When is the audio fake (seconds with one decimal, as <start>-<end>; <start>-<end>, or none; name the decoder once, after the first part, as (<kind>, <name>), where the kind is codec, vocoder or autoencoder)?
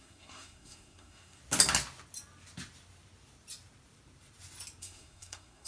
0.0-1.4 (codec, SNAC); 4.8-5.7